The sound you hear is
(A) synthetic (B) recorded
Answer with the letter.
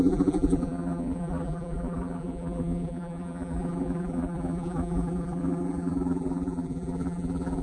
A